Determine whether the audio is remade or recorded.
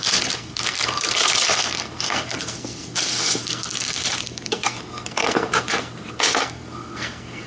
remade